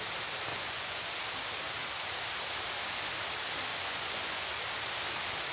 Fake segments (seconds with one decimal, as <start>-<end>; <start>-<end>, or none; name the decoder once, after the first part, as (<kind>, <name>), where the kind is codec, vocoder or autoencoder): 0.5-1.1 (vocoder, Vocos); 3.7-4.5